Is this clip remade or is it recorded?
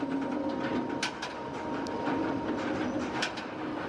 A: recorded